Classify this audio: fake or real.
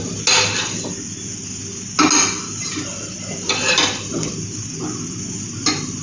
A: real